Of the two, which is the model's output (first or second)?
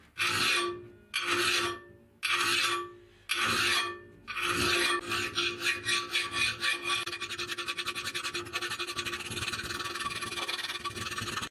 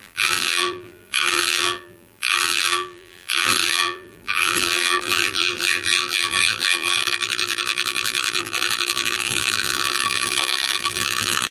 second